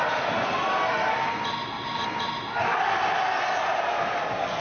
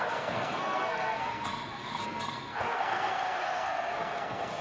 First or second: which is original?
first